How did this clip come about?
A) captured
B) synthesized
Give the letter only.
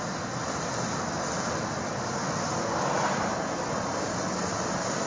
A